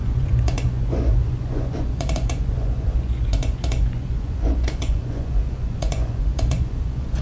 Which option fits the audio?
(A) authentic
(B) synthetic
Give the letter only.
B